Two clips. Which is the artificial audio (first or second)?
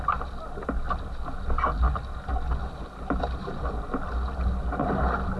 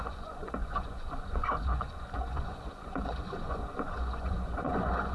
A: second